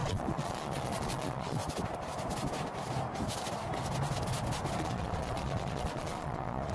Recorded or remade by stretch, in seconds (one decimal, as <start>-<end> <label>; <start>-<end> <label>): 0.0-1.6 remade; 1.6-4.8 recorded; 4.8-6.7 remade